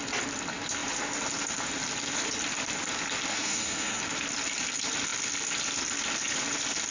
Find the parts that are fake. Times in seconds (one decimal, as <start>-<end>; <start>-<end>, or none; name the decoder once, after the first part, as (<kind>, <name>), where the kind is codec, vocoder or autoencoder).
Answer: 3.3-4.0 (codec, SNAC)